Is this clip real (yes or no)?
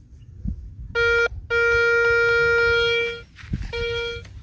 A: yes